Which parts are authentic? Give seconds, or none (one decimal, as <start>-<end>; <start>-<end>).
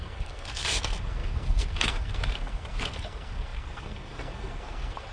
none